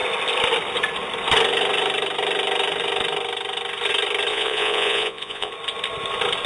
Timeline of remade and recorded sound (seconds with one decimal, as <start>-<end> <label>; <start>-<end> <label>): 0.0-4.3 recorded; 4.3-5.5 remade; 5.5-6.5 recorded